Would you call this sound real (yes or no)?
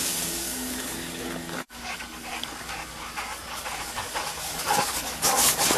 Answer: no